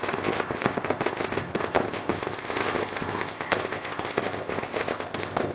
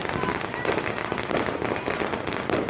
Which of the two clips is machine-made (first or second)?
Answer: first